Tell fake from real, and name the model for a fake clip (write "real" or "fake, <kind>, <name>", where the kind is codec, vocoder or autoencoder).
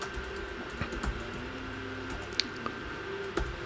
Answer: real